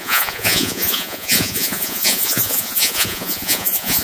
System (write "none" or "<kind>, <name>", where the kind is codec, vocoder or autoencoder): vocoder, Vocos